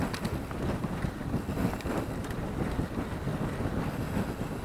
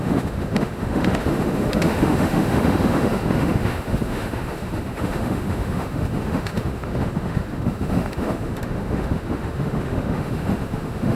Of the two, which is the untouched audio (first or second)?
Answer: first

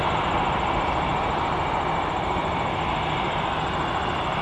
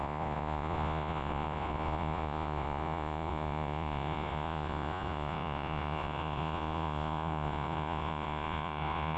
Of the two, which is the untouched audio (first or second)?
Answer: first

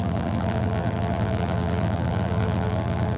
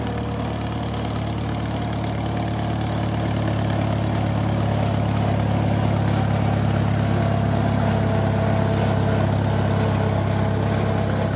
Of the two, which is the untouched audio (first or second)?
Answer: second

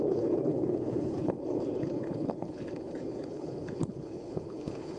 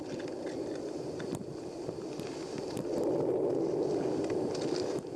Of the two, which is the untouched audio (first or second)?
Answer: second